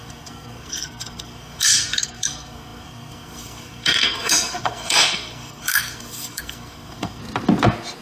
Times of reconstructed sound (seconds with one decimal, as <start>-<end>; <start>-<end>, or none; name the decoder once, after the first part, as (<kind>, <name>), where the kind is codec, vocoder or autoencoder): 0.0-7.2 (codec, SNAC)